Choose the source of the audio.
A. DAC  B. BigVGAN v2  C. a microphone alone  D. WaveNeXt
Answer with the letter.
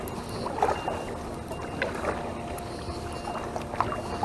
C